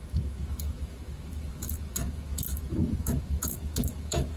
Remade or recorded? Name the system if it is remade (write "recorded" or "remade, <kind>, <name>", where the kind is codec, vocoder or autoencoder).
remade, autoencoder, DAC-VAE